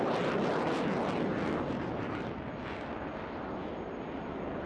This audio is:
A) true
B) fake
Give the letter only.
A